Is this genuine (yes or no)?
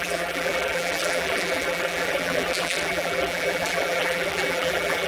no